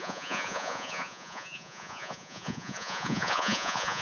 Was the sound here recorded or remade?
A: remade